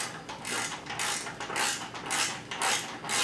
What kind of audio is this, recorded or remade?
recorded